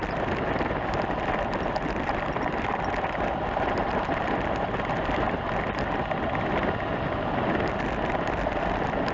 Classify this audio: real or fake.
real